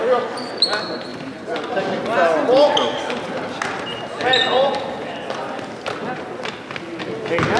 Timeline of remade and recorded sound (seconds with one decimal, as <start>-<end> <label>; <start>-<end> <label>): 0.0-1.1 recorded; 1.1-2.0 remade; 2.0-7.6 recorded